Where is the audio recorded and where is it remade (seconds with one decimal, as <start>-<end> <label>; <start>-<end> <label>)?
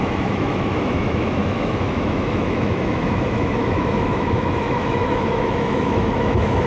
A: 0.0-6.7 remade